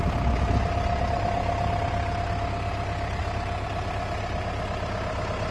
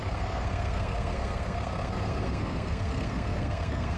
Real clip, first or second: first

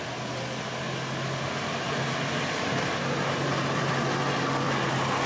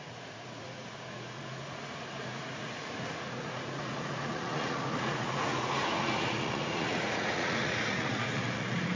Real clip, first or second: first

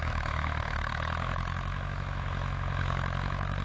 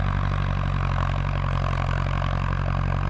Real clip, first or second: second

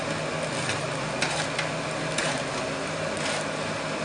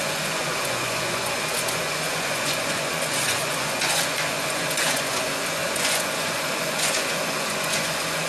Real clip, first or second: first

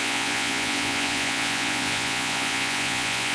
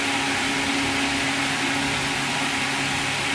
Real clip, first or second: second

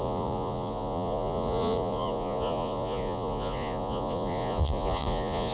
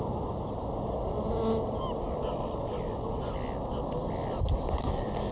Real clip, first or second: second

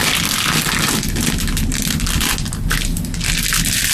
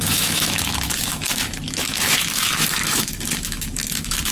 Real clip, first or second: first